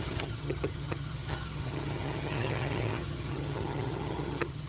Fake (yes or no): yes